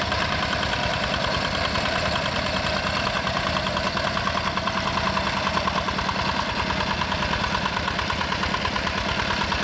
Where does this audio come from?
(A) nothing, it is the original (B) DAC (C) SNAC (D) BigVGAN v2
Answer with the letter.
A